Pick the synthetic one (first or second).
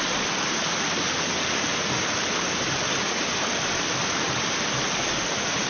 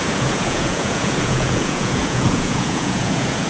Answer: second